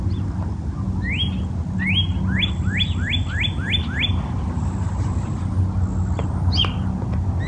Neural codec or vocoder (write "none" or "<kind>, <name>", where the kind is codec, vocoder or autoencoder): none